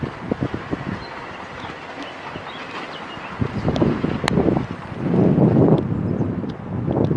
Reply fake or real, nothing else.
real